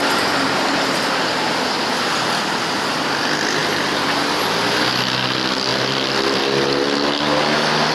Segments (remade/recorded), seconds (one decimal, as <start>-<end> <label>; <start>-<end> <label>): 0.0-5.7 recorded; 5.7-6.4 remade; 6.4-7.9 recorded